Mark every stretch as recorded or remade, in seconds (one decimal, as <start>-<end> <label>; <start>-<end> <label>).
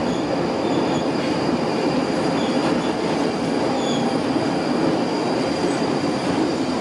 0.0-0.6 recorded; 0.6-2.6 remade; 2.6-5.4 recorded; 5.4-6.8 remade